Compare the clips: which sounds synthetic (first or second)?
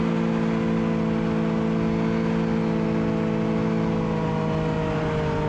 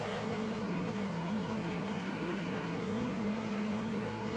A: second